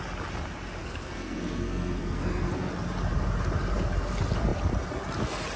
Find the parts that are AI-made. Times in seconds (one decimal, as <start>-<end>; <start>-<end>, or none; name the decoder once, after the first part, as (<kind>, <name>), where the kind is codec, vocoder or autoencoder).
0.8-2.7 (codec, SNAC)